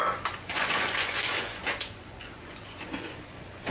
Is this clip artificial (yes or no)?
yes